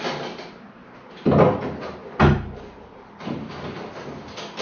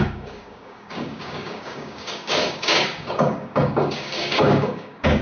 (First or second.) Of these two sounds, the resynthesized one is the second